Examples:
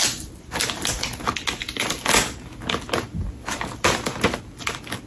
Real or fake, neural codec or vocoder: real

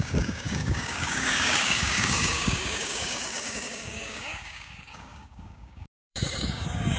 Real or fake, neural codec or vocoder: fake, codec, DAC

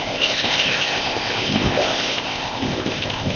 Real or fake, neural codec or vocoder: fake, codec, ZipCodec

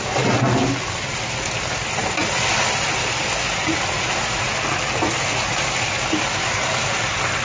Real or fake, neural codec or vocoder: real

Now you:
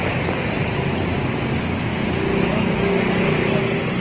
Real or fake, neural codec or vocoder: real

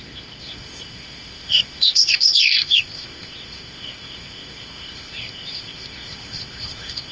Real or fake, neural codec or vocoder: fake, codec, ZipCodec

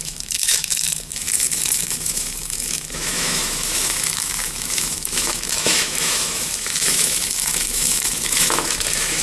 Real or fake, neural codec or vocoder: fake, autoencoder, DAC-VAE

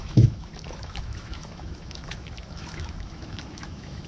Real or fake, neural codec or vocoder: fake, autoencoder, DAC-VAE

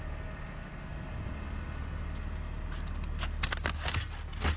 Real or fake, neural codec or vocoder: real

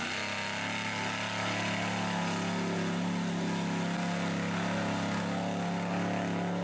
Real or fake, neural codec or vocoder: real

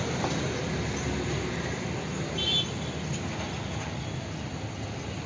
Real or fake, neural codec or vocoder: real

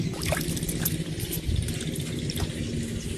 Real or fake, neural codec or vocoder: real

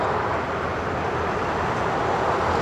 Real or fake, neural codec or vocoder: real